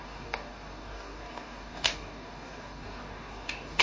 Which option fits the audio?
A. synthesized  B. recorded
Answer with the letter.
A